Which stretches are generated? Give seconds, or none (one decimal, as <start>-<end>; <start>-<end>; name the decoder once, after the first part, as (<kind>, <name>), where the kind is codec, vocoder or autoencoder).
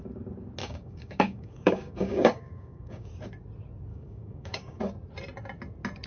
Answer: 0.6-3.1 (codec, DAC); 3.9-4.8